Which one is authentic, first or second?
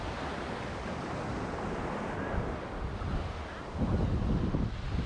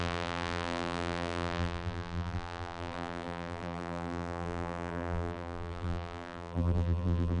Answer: first